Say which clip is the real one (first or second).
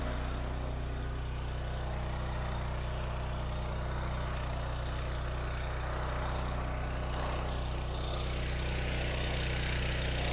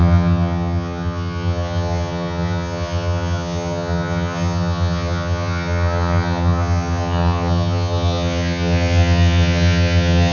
first